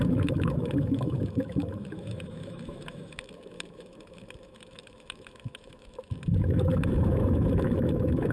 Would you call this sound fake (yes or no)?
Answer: yes